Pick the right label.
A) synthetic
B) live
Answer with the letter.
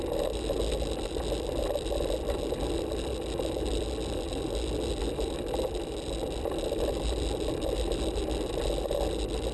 B